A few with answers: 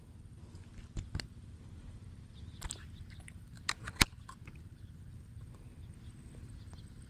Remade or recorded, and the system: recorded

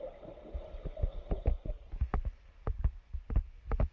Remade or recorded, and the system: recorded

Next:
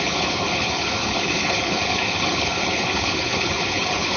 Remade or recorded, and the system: remade, codec, HILCodec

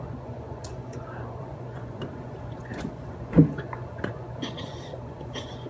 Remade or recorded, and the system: remade, vocoder, Vocos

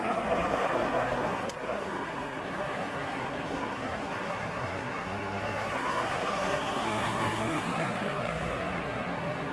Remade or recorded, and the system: remade, codec, SNAC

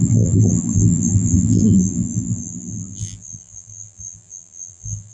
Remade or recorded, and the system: remade, vocoder, BigVGAN v2